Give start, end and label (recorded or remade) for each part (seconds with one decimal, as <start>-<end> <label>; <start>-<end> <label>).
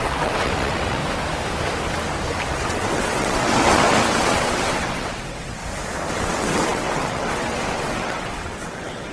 0.0-1.0 remade; 1.0-2.5 recorded; 2.5-5.6 remade; 5.6-6.1 recorded; 6.1-9.1 remade